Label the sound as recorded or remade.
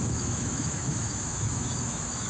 remade